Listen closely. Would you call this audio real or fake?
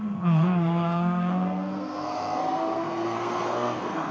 fake